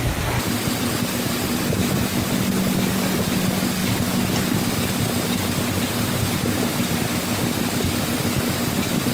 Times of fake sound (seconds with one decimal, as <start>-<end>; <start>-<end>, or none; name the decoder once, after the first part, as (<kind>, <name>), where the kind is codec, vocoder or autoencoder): none